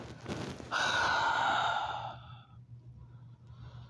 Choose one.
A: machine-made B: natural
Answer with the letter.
B